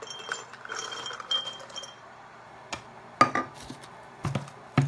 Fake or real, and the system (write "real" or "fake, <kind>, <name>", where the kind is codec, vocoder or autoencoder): real